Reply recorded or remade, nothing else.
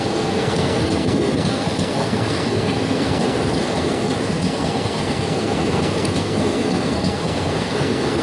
remade